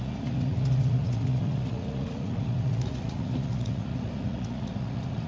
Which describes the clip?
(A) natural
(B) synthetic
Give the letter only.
B